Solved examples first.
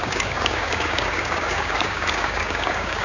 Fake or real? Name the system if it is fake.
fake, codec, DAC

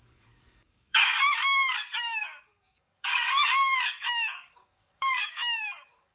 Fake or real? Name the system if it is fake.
fake, codec, DAC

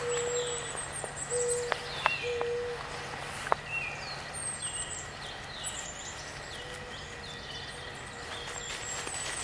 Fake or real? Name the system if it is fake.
real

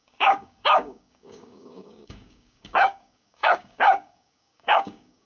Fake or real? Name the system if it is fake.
fake, codec, DAC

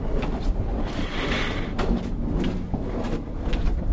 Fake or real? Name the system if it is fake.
real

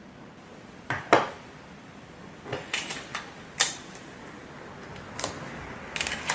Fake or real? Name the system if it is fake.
real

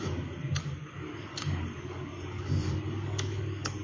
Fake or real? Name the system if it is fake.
fake, codec, DAC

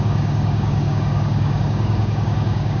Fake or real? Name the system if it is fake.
fake, codec, DAC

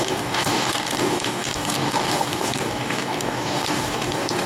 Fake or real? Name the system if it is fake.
fake, codec, DAC